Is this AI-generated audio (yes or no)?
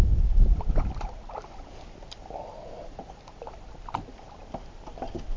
no